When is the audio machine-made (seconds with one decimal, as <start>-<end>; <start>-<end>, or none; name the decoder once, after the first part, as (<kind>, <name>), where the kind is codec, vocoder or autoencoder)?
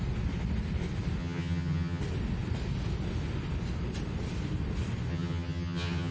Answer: 1.2-2.0 (vocoder, HiFi-GAN); 5.1-6.1